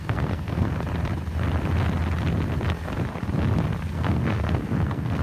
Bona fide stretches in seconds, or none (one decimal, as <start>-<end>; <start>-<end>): 0.7-3.8